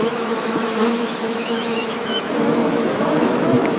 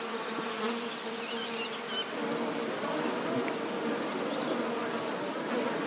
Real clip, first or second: second